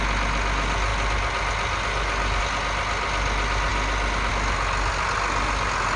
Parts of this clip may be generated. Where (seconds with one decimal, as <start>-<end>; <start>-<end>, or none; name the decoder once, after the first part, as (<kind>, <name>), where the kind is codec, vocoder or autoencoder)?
none